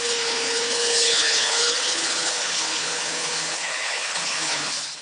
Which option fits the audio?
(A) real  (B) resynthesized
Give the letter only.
B